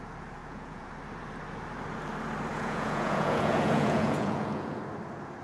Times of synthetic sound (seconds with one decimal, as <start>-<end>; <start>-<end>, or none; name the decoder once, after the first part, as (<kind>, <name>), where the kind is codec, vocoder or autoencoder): 0.4-0.9 (vocoder, Vocos); 2.5-4.8